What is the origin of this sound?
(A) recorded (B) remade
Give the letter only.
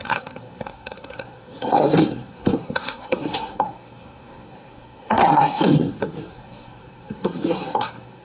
B